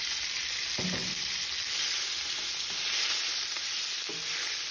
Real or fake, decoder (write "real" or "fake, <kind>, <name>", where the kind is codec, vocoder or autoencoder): real